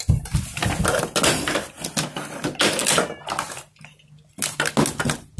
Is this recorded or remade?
recorded